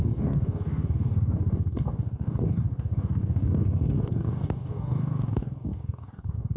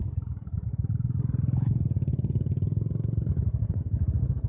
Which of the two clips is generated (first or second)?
first